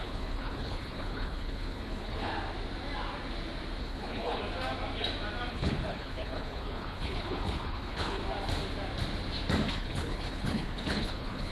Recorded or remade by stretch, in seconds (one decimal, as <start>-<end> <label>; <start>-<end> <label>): 0.0-2.3 remade; 2.3-3.8 recorded; 3.8-4.4 remade; 4.4-5.5 recorded; 5.5-8.2 remade; 8.2-9.7 recorded; 9.7-11.5 remade